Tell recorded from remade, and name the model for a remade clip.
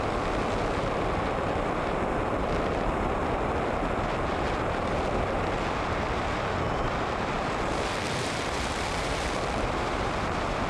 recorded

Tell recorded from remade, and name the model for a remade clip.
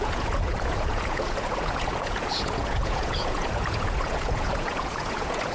remade, vocoder, Vocos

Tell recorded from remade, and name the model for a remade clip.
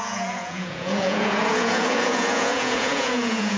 remade, vocoder, Vocos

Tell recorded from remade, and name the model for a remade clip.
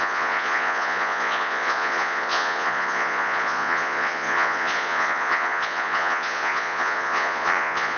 remade, vocoder, Vocos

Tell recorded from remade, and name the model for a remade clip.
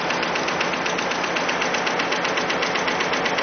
recorded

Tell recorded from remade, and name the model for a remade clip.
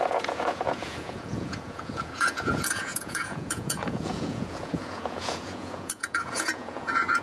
remade, vocoder, Vocos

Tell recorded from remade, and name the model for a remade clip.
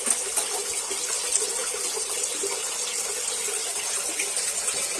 recorded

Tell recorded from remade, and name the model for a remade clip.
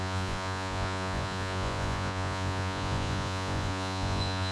remade, vocoder, Vocos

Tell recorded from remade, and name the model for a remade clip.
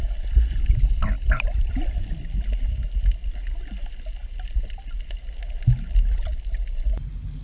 recorded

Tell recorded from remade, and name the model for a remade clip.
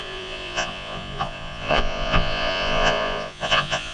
remade, vocoder, Vocos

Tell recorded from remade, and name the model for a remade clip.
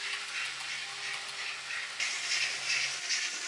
recorded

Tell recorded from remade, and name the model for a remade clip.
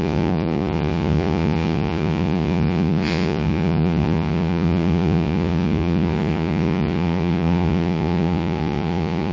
remade, vocoder, Vocos